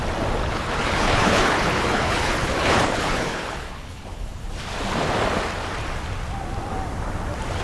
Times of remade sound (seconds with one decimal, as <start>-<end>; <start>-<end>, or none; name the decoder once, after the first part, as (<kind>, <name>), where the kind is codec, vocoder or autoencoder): 0.4-4.5 (codec, HILCodec)